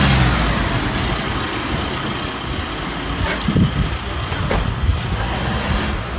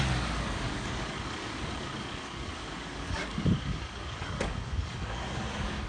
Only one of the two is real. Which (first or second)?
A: first